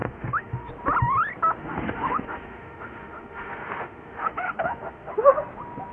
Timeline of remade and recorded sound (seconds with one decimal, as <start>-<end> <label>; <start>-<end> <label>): 0.0-0.7 remade; 0.7-1.6 recorded; 1.6-5.1 remade; 5.1-5.9 recorded